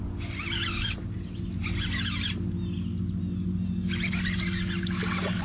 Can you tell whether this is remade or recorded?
recorded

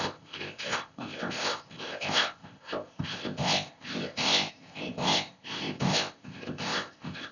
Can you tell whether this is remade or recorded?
remade